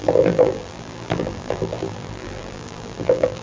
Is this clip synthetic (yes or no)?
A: yes